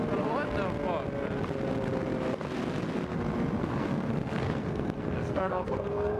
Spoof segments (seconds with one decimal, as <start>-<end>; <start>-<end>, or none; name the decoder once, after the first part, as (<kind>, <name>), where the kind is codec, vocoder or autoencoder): 3.6-6.2 (codec, SNAC)